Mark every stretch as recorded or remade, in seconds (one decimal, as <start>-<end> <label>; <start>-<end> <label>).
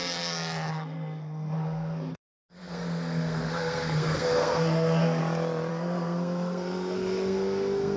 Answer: 0.0-0.7 recorded; 0.7-5.2 remade; 5.2-5.7 recorded; 5.7-8.0 remade